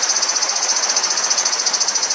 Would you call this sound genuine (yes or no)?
no